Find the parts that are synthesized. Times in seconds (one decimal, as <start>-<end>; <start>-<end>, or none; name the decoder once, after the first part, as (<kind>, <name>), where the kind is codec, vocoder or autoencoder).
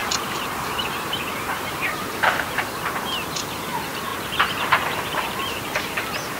0.0-4.1 (vocoder, BigVGAN v2); 4.6-6.4